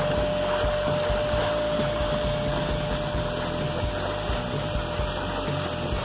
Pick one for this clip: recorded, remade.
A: recorded